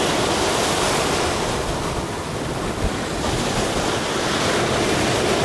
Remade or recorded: recorded